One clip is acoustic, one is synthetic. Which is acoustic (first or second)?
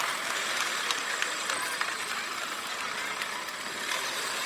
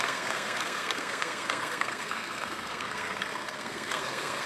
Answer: first